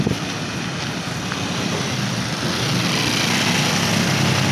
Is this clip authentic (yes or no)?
yes